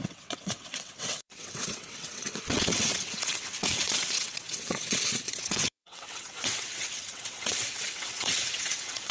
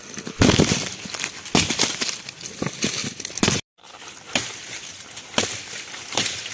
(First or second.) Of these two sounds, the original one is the second